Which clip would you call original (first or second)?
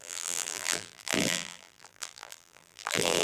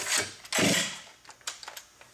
second